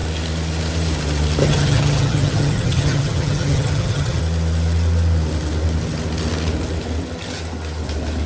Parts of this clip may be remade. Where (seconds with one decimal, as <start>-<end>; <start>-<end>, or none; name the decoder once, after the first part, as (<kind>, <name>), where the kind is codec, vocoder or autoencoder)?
1.4-4.2 (vocoder, HiFi-GAN)